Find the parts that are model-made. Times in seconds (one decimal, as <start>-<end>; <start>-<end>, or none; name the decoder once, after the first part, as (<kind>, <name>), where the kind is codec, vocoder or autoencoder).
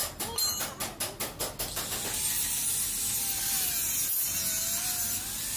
none